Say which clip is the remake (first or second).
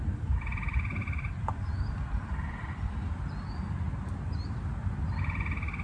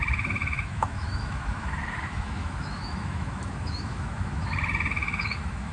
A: second